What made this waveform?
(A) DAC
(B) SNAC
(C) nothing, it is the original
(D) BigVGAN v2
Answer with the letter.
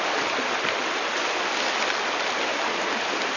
C